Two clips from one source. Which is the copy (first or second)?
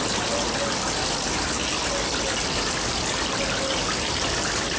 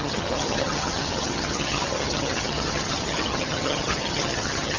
second